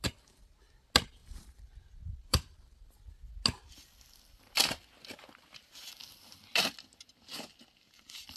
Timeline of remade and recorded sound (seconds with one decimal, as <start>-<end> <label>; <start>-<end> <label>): 0.0-1.2 recorded; 1.2-3.2 remade; 3.2-8.4 recorded